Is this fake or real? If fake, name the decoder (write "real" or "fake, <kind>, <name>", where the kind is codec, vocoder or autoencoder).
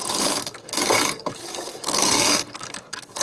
fake, codec, DAC